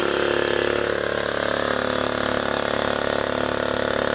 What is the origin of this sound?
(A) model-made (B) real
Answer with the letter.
B